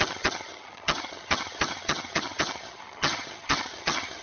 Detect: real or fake fake